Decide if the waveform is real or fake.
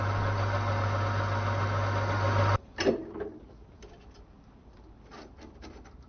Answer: real